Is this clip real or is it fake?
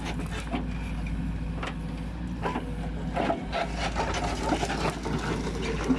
real